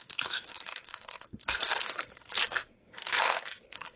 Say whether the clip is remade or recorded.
remade